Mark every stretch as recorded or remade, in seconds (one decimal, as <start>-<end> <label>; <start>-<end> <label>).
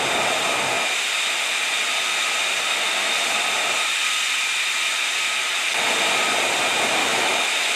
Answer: 0.0-7.0 recorded; 7.0-7.8 remade